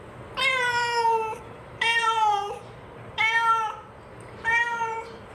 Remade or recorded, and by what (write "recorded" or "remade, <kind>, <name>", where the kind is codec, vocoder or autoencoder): remade, vocoder, BigVGAN v2